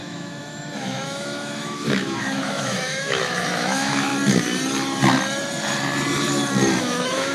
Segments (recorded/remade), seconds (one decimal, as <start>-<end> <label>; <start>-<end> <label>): 0.0-4.1 remade; 4.1-6.8 recorded; 6.8-7.3 remade